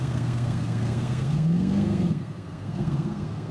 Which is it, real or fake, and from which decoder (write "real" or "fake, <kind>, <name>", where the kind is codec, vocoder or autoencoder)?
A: fake, codec, SNAC